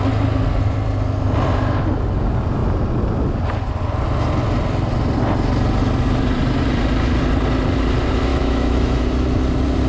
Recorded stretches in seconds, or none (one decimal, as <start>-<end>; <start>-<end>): 0.0-8.3; 9.0-9.9